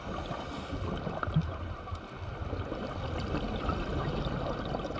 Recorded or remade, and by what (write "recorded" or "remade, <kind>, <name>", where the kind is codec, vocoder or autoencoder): recorded